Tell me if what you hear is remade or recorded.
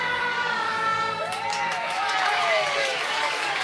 remade